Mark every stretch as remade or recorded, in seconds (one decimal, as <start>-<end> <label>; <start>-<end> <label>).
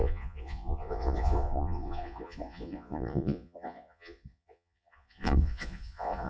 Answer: 0.0-6.3 remade